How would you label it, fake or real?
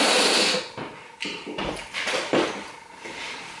real